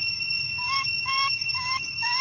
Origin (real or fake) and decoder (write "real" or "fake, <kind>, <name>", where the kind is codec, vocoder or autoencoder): fake, codec, DAC